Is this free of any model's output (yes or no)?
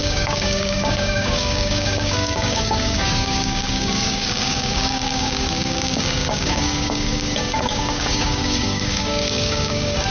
no